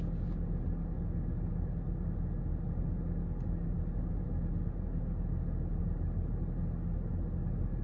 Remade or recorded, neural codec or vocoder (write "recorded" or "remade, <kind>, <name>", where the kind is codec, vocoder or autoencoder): recorded